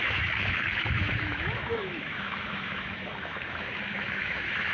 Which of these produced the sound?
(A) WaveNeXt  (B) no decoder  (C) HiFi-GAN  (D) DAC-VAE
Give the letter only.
D